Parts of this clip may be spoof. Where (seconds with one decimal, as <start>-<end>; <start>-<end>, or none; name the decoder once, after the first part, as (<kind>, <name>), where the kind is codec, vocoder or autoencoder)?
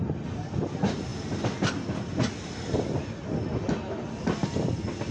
none